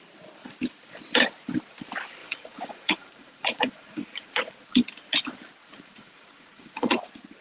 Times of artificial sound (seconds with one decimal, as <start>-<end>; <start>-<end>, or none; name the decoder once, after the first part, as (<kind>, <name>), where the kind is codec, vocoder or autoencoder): 2.2-4.7 (vocoder, Vocos); 5.6-7.0